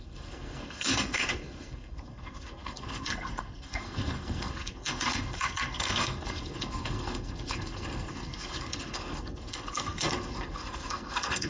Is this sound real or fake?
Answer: fake